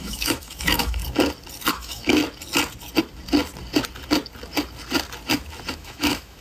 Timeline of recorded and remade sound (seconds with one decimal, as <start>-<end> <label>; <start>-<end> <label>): 0.0-1.0 remade; 1.0-1.7 recorded; 1.7-2.2 remade; 2.2-5.7 recorded; 5.7-6.4 remade